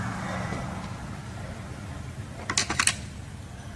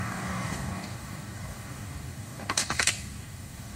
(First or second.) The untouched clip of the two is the first